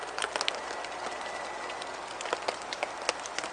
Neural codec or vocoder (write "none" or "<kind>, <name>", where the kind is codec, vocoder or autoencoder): none